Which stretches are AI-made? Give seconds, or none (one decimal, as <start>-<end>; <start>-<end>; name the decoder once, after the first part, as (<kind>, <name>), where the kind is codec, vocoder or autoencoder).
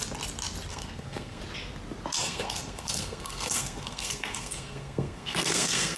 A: 0.7-1.4 (codec, SNAC); 2.2-6.0